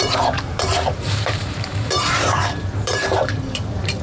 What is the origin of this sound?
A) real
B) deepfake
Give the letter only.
B